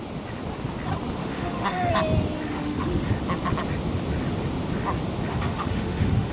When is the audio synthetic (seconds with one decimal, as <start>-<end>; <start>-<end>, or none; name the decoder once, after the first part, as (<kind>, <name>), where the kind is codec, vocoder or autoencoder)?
1.2-1.9 (autoencoder, DAC-VAE); 2.5-3.1; 5.3-6.3

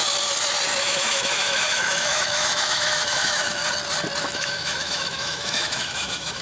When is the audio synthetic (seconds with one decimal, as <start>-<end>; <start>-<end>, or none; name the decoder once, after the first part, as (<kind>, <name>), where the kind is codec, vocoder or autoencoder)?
0.8-3.6 (autoencoder, DAC-VAE); 4.2-6.4

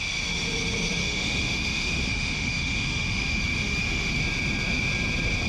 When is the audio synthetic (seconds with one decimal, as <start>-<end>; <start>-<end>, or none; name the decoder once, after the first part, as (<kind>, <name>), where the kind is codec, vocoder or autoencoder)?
1.0-4.2 (autoencoder, DAC-VAE)

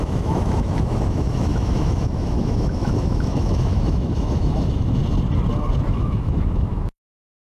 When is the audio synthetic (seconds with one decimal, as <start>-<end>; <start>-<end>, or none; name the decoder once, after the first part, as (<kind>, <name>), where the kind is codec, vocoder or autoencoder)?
0.0-5.0 (autoencoder, DAC-VAE); 5.9-7.5

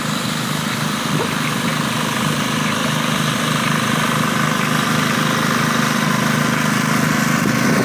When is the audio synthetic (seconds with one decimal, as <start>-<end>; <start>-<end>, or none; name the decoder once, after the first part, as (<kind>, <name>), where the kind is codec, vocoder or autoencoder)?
none

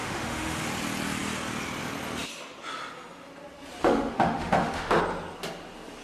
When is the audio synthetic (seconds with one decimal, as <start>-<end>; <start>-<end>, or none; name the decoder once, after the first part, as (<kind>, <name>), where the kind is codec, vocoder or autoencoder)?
0.0-0.6 (autoencoder, DAC-VAE); 3.8-5.0

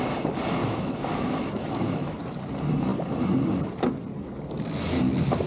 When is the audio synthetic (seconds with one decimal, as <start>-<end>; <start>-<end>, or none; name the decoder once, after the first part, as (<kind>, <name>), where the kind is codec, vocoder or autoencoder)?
0.6-2.2 (autoencoder, DAC-VAE)